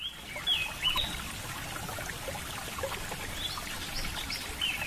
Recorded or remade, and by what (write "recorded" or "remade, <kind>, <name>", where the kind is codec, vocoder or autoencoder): recorded